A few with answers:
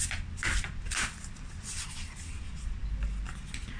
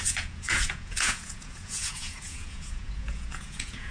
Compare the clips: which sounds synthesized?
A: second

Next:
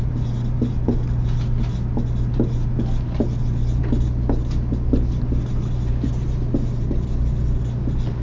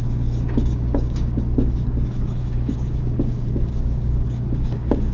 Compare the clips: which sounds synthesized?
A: second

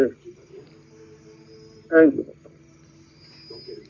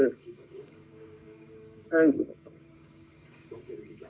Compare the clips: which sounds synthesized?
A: second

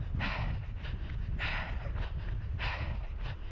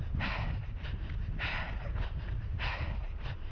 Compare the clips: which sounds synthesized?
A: second